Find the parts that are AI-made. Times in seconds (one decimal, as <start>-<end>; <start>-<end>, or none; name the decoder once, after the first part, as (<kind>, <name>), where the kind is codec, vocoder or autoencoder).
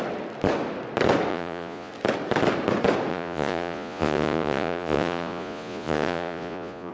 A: 1.3-1.9 (vocoder, Vocos); 3.1-6.9